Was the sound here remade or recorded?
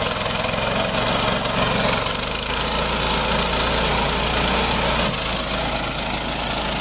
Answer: recorded